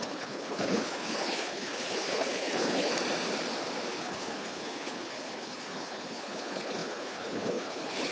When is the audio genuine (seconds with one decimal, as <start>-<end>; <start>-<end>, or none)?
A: 2.9-3.9